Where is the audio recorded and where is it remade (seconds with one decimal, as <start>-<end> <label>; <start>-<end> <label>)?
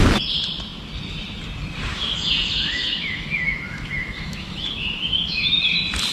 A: 0.0-1.9 recorded; 1.9-5.6 remade; 5.6-6.1 recorded